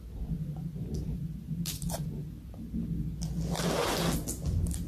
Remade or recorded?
recorded